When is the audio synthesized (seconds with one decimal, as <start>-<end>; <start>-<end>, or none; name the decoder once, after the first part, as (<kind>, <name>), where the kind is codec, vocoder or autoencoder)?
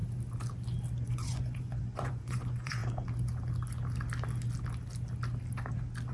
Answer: 1.0-2.8 (vocoder, Vocos)